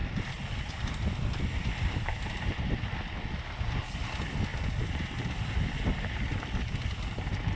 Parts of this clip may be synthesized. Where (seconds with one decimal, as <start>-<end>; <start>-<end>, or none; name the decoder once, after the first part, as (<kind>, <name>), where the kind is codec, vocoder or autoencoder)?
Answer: 0.0-1.7 (vocoder, BigVGAN v2); 4.5-5.8